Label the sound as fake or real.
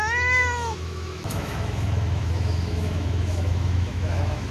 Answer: fake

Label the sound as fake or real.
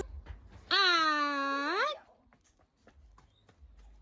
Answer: real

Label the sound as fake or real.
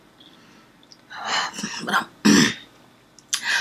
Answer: real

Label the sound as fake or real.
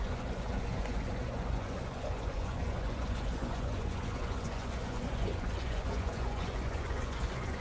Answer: fake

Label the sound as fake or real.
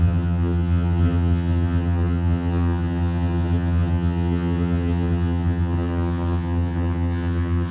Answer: fake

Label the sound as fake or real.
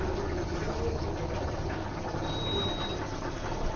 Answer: real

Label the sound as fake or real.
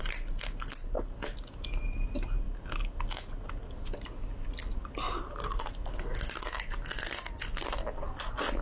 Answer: real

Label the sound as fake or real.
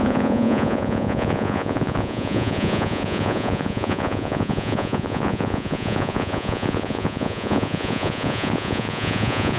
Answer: fake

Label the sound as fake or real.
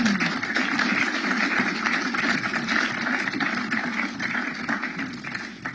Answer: real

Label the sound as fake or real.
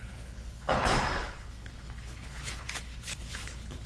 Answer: fake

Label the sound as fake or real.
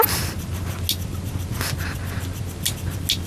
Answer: real